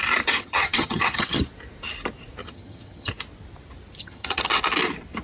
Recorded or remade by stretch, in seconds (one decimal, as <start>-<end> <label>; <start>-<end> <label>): 0.0-0.4 recorded; 0.4-1.4 remade; 1.4-2.4 recorded; 2.4-3.1 remade; 3.1-4.0 recorded; 4.0-4.6 remade; 4.6-5.2 recorded